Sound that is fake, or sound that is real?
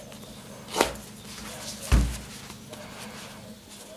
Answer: real